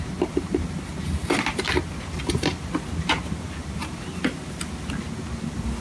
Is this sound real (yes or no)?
yes